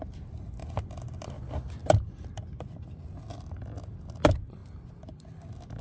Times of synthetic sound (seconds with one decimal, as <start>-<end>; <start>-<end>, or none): none